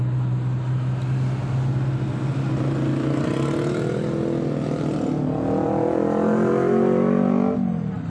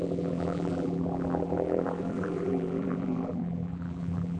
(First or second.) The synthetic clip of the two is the second